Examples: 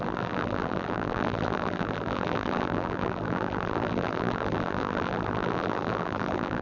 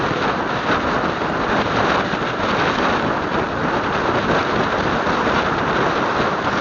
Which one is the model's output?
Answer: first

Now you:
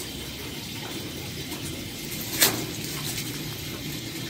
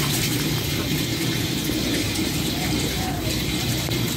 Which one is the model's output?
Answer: second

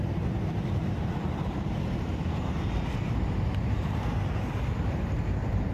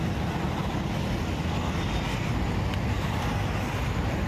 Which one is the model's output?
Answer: first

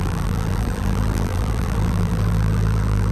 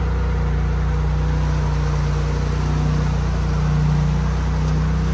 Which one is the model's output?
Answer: first